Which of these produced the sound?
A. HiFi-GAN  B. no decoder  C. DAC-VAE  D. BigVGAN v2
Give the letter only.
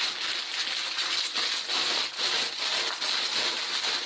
B